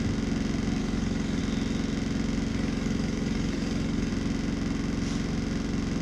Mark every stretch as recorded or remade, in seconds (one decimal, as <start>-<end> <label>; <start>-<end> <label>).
0.0-0.8 recorded; 0.8-1.4 remade; 1.4-2.5 recorded; 2.5-4.1 remade; 4.1-6.0 recorded